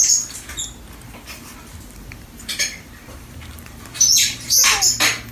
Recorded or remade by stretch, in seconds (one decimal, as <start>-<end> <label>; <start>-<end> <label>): 0.0-1.4 recorded; 1.4-4.6 remade; 4.6-5.3 recorded